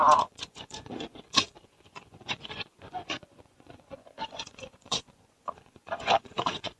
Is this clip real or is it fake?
fake